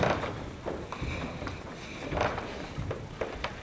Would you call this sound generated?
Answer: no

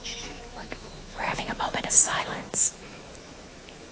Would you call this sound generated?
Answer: yes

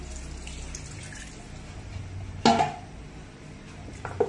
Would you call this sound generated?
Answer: no